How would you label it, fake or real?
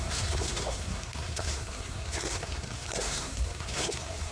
fake